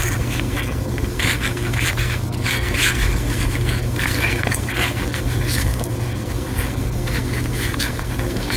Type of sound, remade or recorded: remade